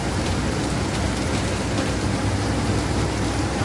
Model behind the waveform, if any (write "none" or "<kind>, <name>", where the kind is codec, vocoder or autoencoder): none